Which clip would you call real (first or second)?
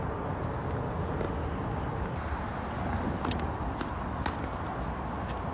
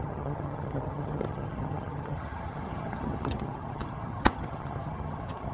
first